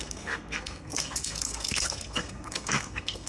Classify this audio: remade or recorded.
remade